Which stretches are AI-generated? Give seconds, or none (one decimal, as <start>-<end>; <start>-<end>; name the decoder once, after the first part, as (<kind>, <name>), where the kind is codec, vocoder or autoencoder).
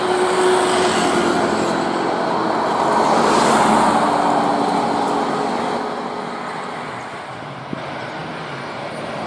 none